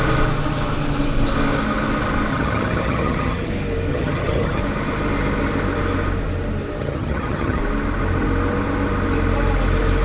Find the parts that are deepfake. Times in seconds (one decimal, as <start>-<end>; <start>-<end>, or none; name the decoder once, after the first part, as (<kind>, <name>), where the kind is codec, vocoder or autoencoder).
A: 2.3-3.5 (vocoder, HiFi-GAN); 3.9-4.6; 6.8-7.6